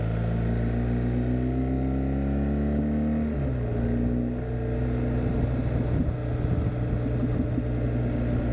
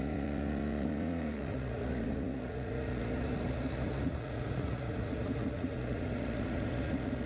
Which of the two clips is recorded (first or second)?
first